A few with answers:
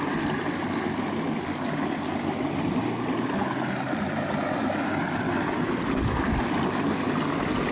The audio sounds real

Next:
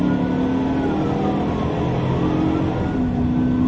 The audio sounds real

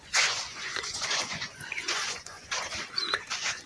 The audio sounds fake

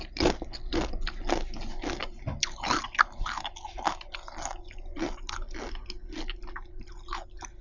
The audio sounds real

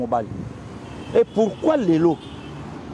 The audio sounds real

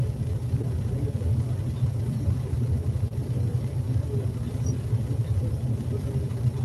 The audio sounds real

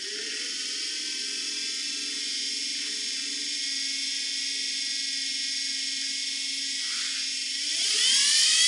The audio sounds real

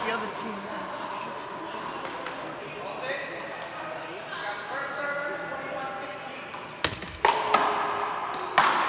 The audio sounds real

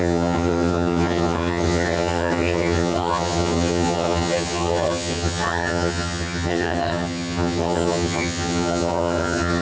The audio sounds fake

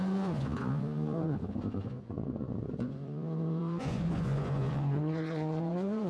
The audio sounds fake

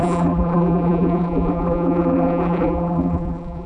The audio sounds fake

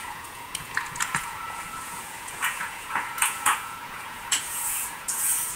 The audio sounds fake